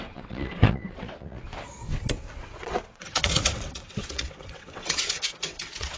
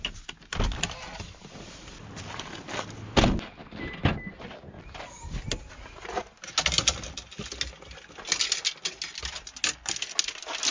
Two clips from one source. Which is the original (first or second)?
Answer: second